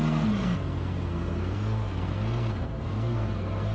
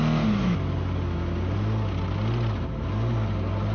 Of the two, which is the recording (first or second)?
second